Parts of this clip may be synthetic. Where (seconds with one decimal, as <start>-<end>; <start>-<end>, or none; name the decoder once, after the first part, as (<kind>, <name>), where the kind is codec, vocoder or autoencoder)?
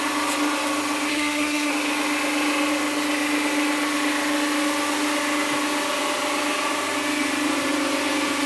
1.1-1.7 (codec, SNAC)